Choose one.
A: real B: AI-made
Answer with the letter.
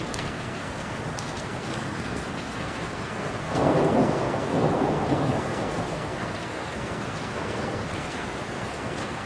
B